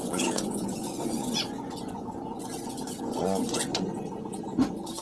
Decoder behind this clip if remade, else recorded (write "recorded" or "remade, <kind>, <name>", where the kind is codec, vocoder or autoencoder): remade, vocoder, Vocos